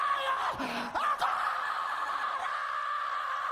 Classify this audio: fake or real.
real